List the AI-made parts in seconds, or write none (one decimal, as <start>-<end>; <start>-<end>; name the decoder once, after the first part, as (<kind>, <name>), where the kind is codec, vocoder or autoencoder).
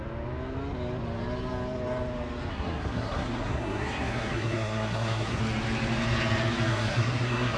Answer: 2.5-5.4 (codec, SNAC); 6.7-7.6